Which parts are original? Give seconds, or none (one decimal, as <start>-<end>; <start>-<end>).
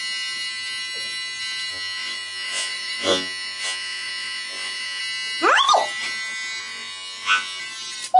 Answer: 0.0-1.7; 5.0-6.6; 7.6-8.2